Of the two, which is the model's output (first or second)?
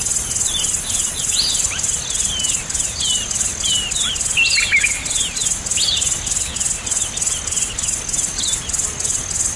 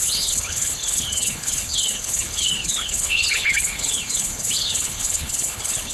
second